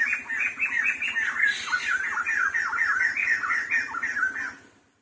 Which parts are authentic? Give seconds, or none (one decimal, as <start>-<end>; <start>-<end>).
0.0-3.2; 3.7-5.0